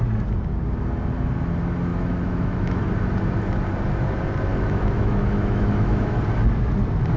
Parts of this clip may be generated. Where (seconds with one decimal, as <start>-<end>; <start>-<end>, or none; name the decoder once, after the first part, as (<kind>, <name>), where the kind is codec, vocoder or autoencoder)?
1.9-2.8 (autoencoder, DAC-VAE); 4.5-6.2